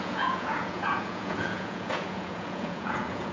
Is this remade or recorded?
remade